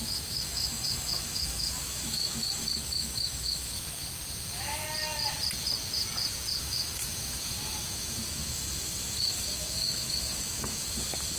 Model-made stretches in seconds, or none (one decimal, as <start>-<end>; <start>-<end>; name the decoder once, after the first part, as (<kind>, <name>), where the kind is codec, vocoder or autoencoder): 0.0-4.8 (autoencoder, DAC-VAE); 6.6-11.4